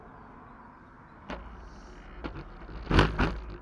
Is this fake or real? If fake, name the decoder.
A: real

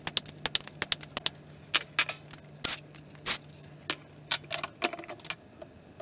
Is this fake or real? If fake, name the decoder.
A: real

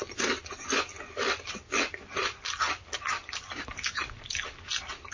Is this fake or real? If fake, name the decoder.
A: real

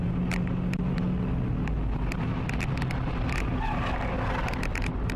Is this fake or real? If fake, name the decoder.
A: real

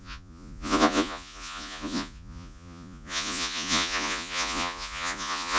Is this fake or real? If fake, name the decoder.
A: fake, vocoder, Vocos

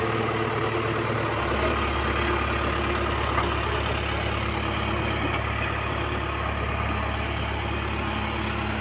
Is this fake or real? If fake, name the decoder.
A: real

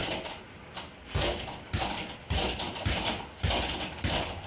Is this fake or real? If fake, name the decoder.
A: real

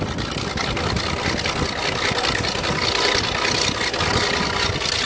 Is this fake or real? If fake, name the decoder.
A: real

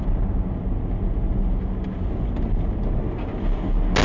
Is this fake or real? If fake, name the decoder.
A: real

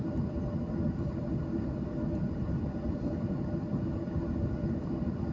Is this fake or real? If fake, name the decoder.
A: real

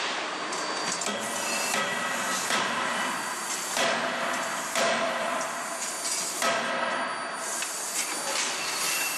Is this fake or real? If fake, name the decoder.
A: real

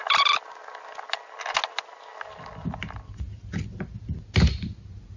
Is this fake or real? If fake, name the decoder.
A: real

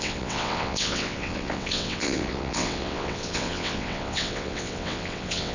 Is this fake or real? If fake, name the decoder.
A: fake, vocoder, WaveNeXt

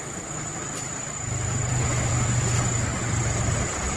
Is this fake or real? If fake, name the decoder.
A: fake, vocoder, BigVGAN v2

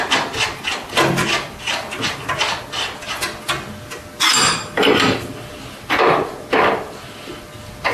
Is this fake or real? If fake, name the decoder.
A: real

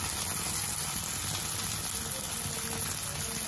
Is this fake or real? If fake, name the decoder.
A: real